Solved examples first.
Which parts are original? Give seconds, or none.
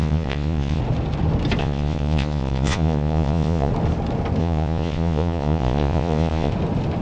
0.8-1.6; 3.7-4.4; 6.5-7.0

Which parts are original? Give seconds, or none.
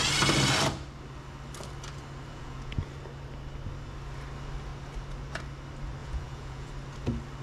0.0-2.3; 2.9-6.0; 6.7-7.4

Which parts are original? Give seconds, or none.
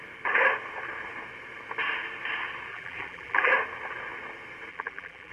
0.0-2.7; 3.5-4.7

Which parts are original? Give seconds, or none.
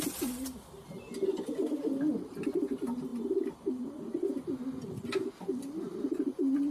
0.0-6.7